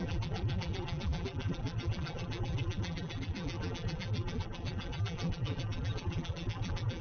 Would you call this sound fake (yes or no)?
yes